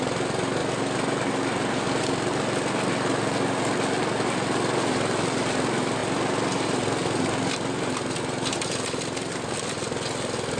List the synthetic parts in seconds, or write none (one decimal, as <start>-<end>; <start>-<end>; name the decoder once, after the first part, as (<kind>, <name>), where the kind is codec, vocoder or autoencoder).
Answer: none